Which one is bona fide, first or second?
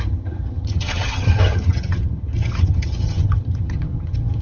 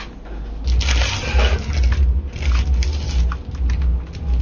second